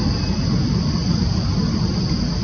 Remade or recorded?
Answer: recorded